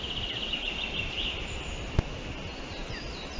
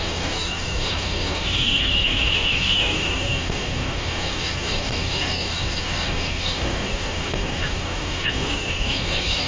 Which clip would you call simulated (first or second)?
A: second